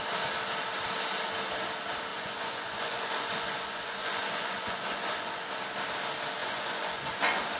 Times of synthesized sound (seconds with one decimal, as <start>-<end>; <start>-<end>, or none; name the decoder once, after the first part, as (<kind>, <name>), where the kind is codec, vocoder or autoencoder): 2.1-5.5 (vocoder, Vocos); 6.4-7.6